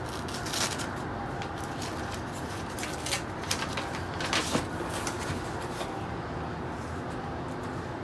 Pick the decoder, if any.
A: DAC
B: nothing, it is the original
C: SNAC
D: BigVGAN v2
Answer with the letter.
B